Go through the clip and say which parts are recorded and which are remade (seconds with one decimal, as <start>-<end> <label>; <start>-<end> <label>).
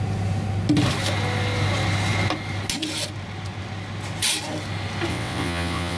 0.0-5.1 recorded; 5.1-6.0 remade